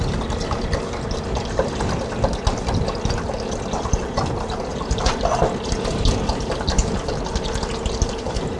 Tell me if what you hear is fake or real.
real